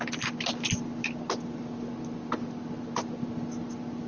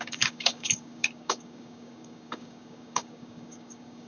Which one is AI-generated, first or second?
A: second